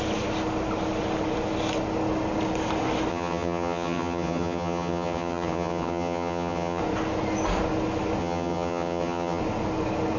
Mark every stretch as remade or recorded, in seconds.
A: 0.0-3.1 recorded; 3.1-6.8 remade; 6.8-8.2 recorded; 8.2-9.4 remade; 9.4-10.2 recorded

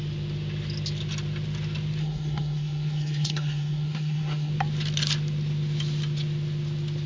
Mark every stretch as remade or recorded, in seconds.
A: 0.0-2.0 recorded; 2.0-4.5 remade; 4.5-7.1 recorded

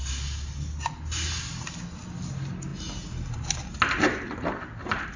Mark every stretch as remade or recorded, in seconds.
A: 0.0-5.2 recorded

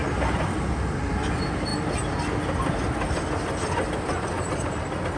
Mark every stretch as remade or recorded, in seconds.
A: 0.0-5.2 recorded

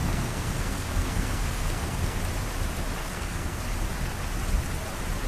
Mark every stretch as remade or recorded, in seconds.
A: 0.0-2.2 remade; 2.2-3.0 recorded; 3.0-3.6 remade; 3.6-5.3 recorded

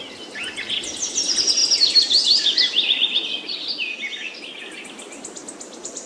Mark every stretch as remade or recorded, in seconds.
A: 0.0-6.1 recorded

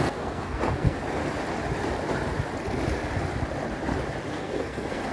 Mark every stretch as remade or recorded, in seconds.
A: 0.0-1.2 remade; 1.2-4.3 recorded; 4.3-5.1 remade

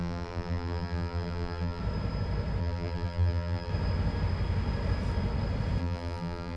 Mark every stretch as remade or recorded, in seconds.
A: 0.0-1.8 remade; 1.8-2.6 recorded; 2.6-3.7 remade; 3.7-5.8 recorded; 5.8-6.6 remade